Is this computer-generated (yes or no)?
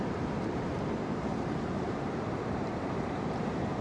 yes